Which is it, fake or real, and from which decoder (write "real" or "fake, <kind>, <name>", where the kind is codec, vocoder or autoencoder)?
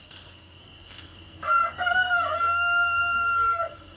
fake, codec, SNAC